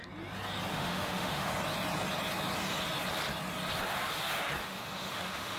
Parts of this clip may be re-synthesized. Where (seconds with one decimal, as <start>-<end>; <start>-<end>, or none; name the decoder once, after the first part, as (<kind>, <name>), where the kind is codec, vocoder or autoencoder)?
0.7-1.5 (autoencoder, DAC-VAE); 4.6-5.6